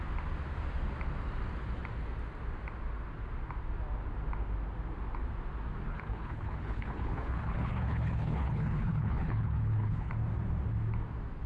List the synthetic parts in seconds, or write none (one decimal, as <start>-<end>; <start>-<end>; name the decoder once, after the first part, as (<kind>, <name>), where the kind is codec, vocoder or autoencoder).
5.9-10.1 (codec, HILCodec)